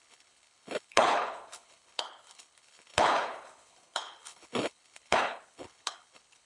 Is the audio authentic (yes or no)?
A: no